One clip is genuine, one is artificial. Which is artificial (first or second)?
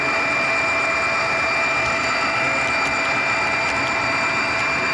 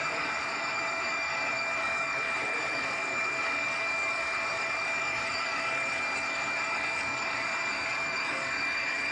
second